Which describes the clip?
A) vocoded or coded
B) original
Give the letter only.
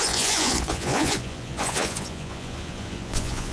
A